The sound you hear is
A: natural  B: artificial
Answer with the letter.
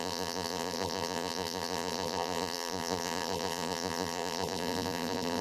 B